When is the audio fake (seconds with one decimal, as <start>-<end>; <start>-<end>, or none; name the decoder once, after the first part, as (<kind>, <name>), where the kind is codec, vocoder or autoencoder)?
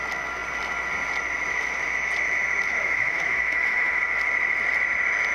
2.7-4.0 (autoencoder, DAC-VAE)